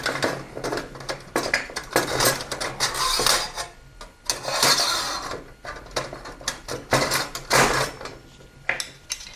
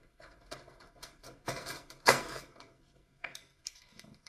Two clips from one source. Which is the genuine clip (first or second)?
first